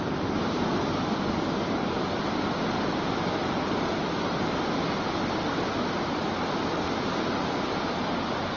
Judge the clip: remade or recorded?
recorded